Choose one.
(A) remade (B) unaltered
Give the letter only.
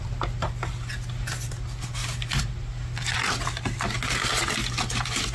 B